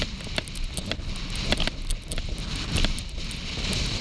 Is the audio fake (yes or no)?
no